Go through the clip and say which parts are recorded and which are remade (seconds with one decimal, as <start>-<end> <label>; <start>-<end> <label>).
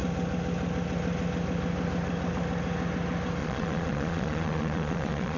0.0-3.4 recorded; 3.4-5.4 remade